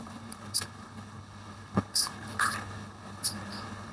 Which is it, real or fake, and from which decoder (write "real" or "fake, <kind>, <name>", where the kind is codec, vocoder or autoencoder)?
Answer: fake, codec, HILCodec